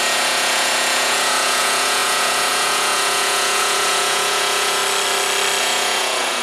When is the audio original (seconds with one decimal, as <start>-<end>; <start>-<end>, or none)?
4.8-5.6